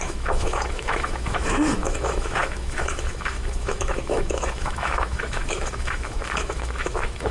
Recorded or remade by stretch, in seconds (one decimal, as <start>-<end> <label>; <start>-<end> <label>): 0.0-7.3 remade

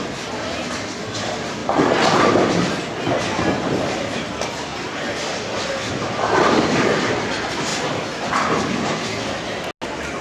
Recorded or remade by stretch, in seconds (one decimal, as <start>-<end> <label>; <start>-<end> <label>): 0.0-1.6 recorded; 1.6-2.5 remade; 2.5-4.7 recorded; 4.7-5.9 remade; 5.9-10.2 recorded

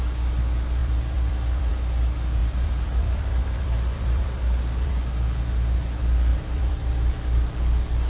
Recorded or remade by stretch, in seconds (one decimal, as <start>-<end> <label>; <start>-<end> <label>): 0.0-0.8 recorded; 0.8-1.7 remade; 1.7-2.4 recorded; 2.4-4.9 remade; 4.9-6.3 recorded; 6.3-7.1 remade; 7.1-8.1 recorded

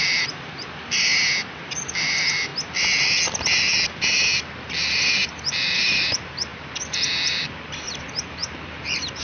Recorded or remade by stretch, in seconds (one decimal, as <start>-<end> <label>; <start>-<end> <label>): 0.0-1.1 remade; 1.1-1.6 recorded; 1.6-9.2 remade

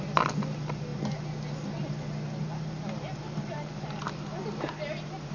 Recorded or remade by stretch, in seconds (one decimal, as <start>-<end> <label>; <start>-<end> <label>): 0.0-5.3 recorded

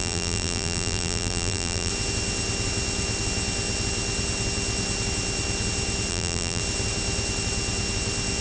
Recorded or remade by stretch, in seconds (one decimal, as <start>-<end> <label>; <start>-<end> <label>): 0.0-1.9 remade; 1.9-6.1 recorded; 6.1-6.6 remade; 6.6-8.4 recorded

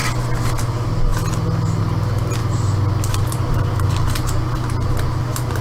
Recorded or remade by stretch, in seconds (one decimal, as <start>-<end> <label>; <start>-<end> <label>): 0.0-5.6 recorded